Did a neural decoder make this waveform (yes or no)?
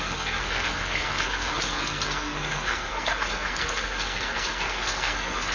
yes